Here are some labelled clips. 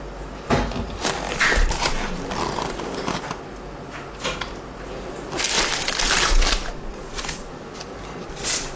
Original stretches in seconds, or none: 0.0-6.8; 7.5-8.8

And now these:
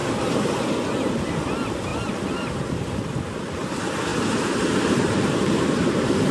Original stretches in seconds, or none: 0.5-1.9; 3.4-4.1

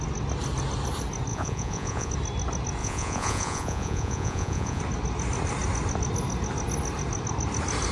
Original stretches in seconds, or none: 0.0-1.3; 2.1-2.8; 4.8-7.9

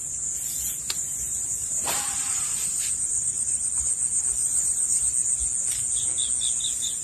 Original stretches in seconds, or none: 0.0-1.6; 3.7-4.4; 5.0-7.0

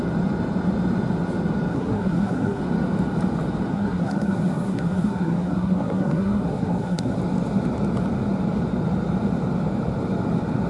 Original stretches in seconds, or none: 0.0-1.7; 2.6-3.7; 7.2-10.7

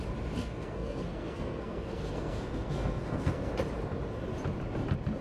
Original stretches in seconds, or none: 0.0-0.4; 3.5-5.2

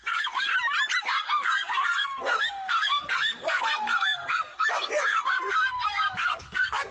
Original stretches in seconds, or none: 0.5-1.0

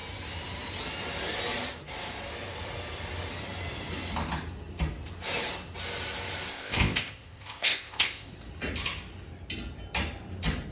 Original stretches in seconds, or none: 0.0-6.5; 8.3-10.7